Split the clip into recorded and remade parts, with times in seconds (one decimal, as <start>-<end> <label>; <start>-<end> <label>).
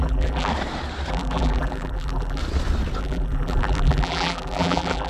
0.0-0.5 remade; 0.5-1.1 recorded; 1.1-2.4 remade; 2.4-3.0 recorded; 3.0-5.1 remade